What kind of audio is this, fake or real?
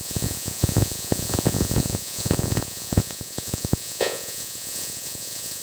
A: fake